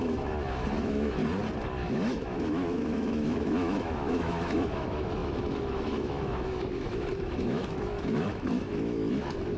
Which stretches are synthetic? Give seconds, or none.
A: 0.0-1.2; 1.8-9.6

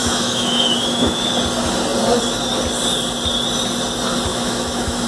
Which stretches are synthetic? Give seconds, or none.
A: 0.0-1.2; 4.3-5.1

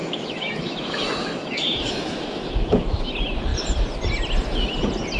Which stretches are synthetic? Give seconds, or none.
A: 0.0-3.1